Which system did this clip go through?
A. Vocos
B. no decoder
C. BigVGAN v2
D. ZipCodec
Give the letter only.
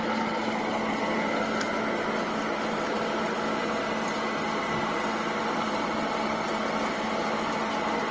B